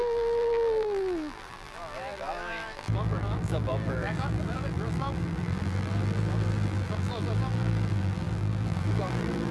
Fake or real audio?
fake